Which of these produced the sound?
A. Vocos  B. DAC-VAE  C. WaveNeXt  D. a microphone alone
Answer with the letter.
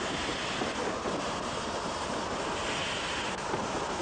D